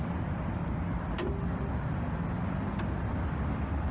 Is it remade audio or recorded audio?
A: recorded